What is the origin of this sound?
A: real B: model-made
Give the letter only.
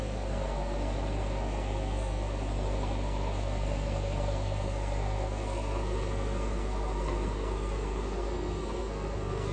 B